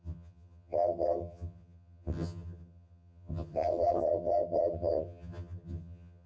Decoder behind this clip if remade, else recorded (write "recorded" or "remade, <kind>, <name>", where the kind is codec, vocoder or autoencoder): remade, vocoder, HiFi-GAN